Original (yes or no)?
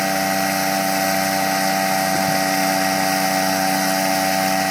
yes